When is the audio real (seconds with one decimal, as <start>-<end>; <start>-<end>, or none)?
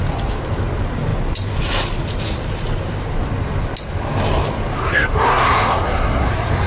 0.0-4.8; 6.3-6.7